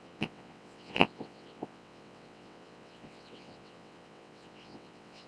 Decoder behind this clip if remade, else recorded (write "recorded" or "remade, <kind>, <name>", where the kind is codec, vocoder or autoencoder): remade, vocoder, WaveNeXt